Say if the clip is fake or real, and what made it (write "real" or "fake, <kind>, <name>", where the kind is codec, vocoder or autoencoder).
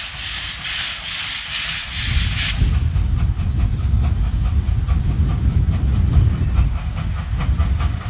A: real